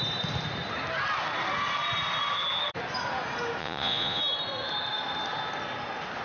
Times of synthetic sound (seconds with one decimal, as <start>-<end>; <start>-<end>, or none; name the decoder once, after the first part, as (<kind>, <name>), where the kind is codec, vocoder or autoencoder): 3.6-4.2 (vocoder, Vocos)